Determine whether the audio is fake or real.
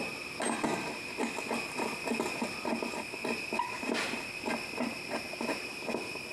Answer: real